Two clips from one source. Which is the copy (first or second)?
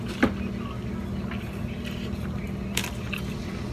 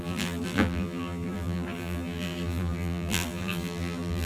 second